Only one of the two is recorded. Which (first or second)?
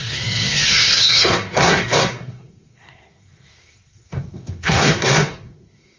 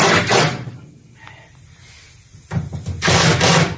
second